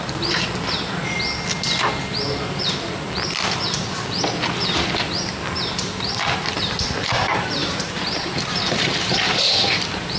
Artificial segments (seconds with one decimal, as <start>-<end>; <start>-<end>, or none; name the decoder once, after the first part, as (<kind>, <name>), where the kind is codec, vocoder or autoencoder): 0.0-1.0 (vocoder, BigVGAN v2); 5.8-10.2